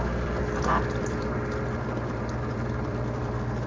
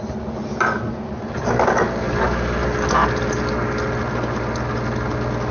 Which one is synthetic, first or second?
first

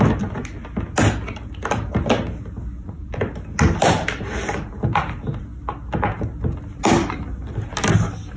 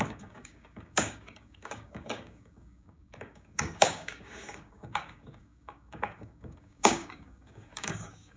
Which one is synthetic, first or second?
second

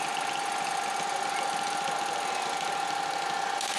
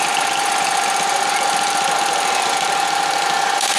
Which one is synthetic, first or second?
second